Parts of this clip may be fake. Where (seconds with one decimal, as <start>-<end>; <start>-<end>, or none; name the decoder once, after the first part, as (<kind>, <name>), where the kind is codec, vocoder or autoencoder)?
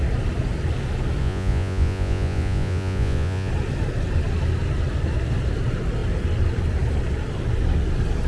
1.2-3.5 (vocoder, Vocos)